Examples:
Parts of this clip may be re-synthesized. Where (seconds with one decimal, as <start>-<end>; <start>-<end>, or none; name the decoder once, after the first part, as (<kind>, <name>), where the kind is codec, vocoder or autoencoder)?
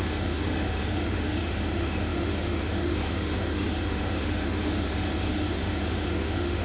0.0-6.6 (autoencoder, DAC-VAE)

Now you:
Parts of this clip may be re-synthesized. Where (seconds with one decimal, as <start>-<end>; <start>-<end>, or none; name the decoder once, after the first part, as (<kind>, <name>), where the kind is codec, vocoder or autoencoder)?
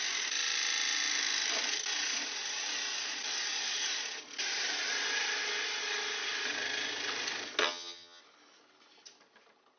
7.6-8.2 (vocoder, HiFi-GAN)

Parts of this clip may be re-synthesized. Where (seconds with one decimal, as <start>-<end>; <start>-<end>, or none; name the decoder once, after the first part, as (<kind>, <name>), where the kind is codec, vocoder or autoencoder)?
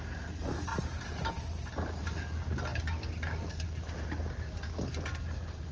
none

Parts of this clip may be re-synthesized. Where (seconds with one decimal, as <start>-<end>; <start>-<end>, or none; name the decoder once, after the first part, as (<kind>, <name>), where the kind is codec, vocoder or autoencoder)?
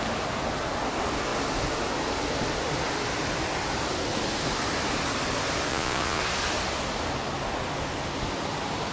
5.7-6.2 (vocoder, Vocos)